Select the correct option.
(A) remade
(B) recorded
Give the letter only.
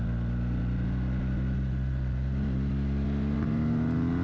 B